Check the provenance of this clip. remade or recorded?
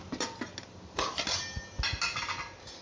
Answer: recorded